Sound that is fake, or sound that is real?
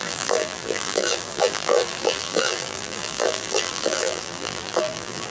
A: fake